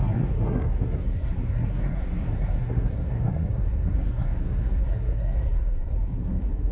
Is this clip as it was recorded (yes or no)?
no